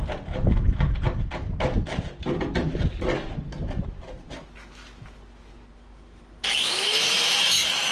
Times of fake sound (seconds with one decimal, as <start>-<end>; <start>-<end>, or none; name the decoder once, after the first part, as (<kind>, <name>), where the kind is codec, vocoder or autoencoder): 6.6-7.9 (autoencoder, DAC-VAE)